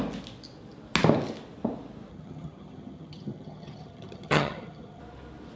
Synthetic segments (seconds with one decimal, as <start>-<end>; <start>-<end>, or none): 2.1-5.0